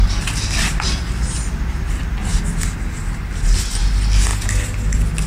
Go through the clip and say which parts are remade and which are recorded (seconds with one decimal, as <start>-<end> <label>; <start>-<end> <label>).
0.0-5.3 recorded